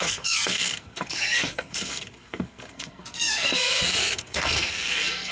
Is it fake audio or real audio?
fake